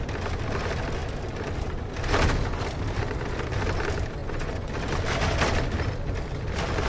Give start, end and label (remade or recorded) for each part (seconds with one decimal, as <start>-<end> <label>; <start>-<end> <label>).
0.0-4.2 recorded; 4.2-4.7 remade; 4.7-6.9 recorded